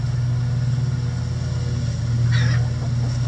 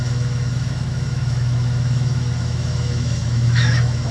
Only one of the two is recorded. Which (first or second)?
first